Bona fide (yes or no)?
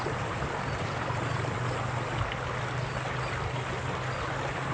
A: yes